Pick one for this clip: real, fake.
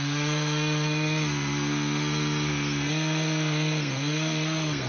fake